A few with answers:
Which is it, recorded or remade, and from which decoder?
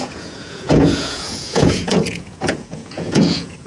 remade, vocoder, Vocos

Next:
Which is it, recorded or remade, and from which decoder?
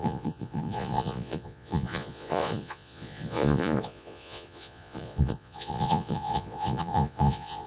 remade, vocoder, Vocos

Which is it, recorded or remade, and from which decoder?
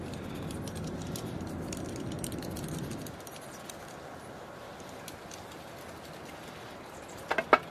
recorded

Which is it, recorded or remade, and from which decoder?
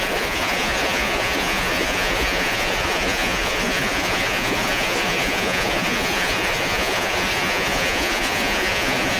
remade, vocoder, Vocos